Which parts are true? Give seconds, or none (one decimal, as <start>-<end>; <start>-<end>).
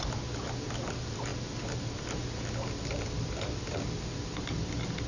0.0-5.1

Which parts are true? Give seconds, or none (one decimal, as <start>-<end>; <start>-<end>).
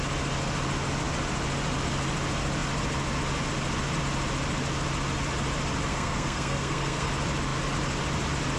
0.0-5.9; 7.1-8.6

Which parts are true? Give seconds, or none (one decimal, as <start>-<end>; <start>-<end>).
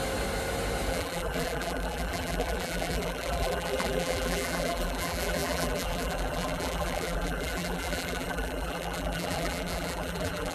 0.0-0.9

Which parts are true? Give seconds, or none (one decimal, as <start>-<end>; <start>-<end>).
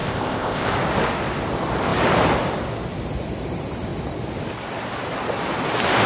0.7-6.1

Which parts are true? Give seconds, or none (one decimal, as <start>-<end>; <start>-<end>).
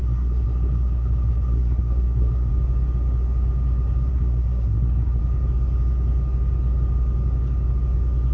2.5-4.1; 5.2-8.3